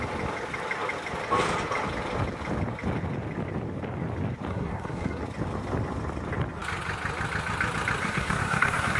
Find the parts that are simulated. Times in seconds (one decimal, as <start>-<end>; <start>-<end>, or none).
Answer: 4.5-5.2; 8.0-9.0